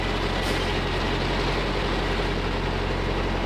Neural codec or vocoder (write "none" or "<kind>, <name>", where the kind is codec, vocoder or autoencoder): none